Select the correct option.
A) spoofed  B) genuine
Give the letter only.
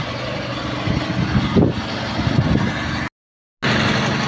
B